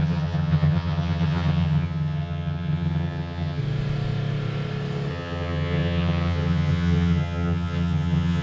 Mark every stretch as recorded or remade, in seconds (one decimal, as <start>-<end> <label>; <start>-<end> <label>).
0.0-3.6 remade; 3.6-5.1 recorded; 5.1-8.4 remade